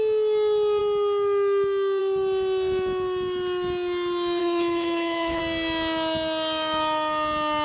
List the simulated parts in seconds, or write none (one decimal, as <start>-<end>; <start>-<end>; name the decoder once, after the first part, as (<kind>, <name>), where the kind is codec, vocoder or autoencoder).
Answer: 4.4-5.4 (codec, HILCodec)